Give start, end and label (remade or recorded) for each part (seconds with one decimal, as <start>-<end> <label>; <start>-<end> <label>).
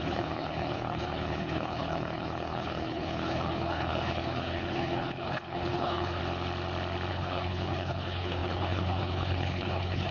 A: 0.0-6.2 remade; 6.2-7.1 recorded; 7.1-10.1 remade